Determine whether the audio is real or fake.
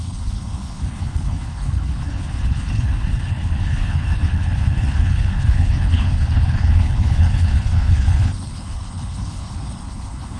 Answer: fake